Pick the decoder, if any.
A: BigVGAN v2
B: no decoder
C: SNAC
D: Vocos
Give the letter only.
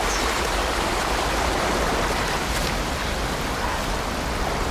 B